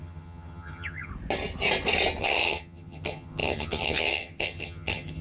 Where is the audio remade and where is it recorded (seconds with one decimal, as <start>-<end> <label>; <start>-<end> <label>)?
0.0-1.1 remade; 1.1-2.2 recorded; 2.2-5.2 remade